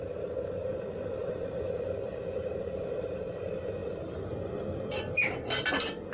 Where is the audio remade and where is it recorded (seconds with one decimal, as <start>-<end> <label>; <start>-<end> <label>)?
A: 0.0-6.1 recorded